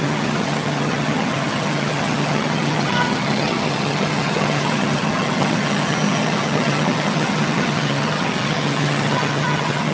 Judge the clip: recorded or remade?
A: remade